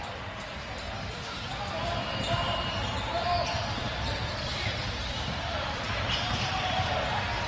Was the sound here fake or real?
fake